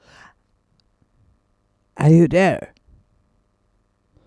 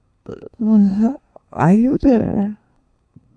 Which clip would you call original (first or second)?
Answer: first